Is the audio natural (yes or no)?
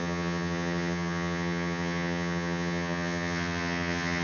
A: no